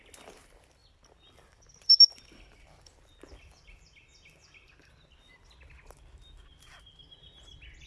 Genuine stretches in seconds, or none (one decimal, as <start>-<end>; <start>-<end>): 0.0-0.8; 5.5-7.9